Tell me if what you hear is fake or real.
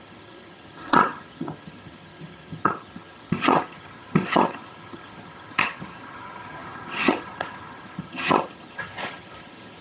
fake